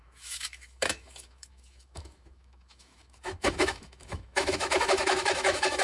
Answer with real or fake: fake